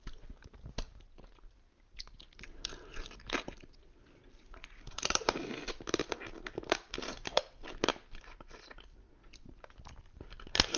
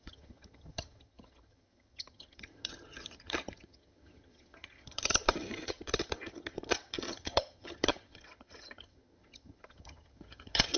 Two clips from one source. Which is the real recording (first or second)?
first